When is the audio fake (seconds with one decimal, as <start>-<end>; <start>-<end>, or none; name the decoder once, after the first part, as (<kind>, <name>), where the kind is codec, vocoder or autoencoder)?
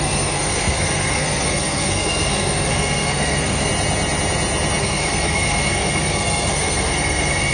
0.0-3.7 (codec, SNAC); 4.8-7.5